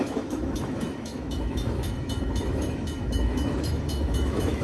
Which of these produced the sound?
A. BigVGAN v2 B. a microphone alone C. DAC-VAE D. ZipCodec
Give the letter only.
C